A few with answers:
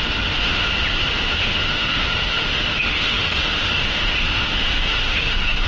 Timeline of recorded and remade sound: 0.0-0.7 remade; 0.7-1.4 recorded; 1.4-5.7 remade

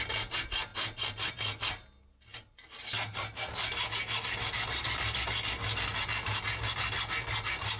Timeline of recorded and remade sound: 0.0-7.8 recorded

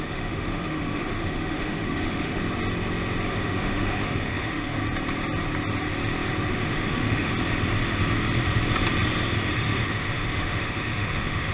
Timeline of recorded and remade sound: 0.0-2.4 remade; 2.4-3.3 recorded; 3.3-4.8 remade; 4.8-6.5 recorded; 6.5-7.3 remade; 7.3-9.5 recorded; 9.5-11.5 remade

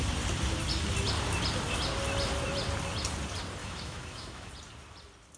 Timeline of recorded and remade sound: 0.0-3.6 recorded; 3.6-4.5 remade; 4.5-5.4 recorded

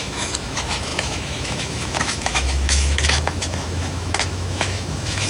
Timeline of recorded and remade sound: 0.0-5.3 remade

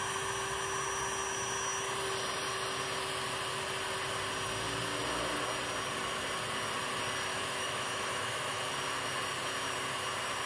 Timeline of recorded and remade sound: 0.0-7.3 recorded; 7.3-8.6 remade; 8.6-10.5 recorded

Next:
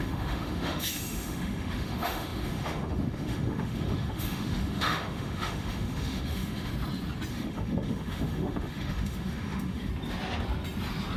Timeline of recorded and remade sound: 0.0-6.7 remade; 6.7-7.3 recorded; 7.3-9.9 remade; 9.9-11.2 recorded